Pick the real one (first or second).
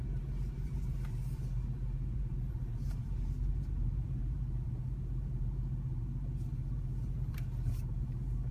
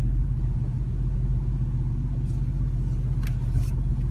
second